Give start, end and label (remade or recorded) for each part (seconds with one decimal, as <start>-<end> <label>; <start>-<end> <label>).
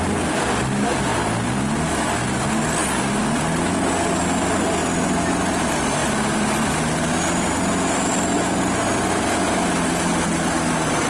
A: 0.0-11.1 recorded